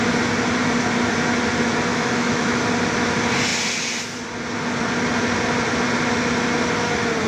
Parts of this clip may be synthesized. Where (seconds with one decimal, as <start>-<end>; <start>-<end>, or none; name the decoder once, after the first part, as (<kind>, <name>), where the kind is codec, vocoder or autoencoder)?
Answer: 1.9-2.6 (autoencoder, DAC-VAE)